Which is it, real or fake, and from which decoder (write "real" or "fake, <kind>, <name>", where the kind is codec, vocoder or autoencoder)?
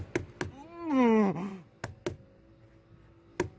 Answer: real